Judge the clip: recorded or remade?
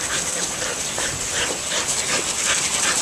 recorded